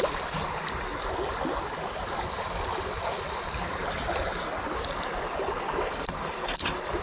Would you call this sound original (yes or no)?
yes